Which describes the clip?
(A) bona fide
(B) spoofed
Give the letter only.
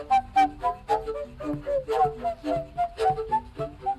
A